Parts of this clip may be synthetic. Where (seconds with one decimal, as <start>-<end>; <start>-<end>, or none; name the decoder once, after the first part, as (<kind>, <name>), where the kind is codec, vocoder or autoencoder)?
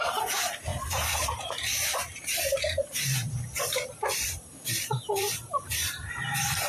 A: 0.0-6.7 (vocoder, BigVGAN v2)